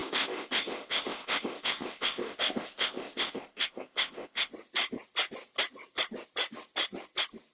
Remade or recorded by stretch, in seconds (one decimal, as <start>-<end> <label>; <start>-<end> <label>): 0.0-4.5 remade; 4.5-7.5 recorded